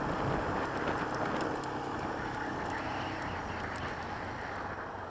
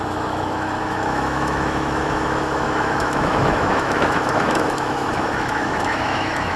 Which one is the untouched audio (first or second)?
first